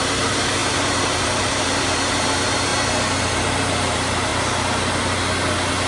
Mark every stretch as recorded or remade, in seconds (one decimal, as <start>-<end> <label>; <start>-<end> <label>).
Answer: 0.0-2.7 remade; 2.7-3.2 recorded; 3.2-4.3 remade; 4.3-5.9 recorded